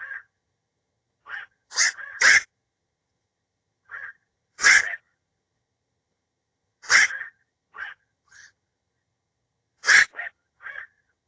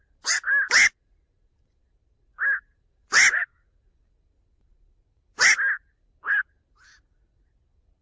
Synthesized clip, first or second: first